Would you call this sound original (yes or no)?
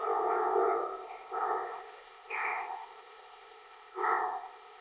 no